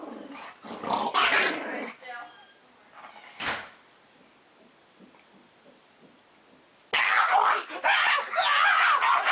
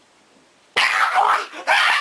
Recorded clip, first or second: first